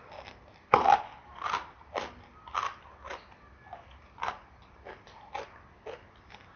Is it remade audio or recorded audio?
recorded